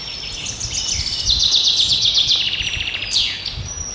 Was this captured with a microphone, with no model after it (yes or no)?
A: yes